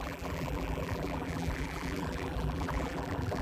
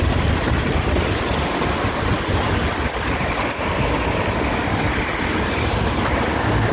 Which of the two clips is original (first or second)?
second